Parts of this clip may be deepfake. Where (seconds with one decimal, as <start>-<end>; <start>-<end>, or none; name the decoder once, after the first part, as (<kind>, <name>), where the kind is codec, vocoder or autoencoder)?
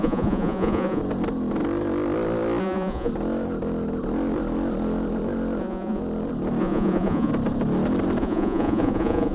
0.0-1.0 (vocoder, Vocos); 2.6-3.1; 5.6-6.0; 6.6-7.3; 8.2-9.3